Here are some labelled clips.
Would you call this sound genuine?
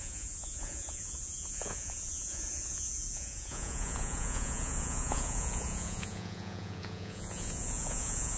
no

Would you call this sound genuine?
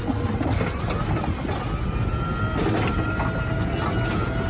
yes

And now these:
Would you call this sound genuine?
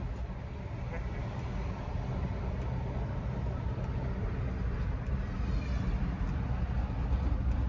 yes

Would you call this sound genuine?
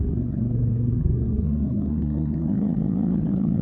no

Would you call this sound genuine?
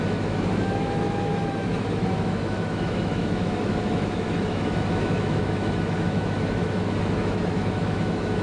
no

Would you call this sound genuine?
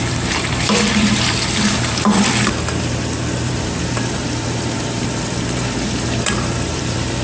no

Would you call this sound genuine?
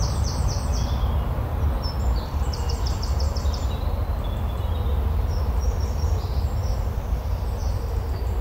yes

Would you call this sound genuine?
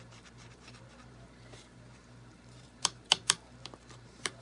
no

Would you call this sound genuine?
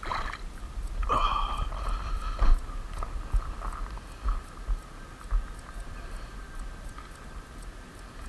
yes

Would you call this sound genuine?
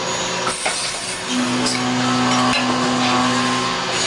yes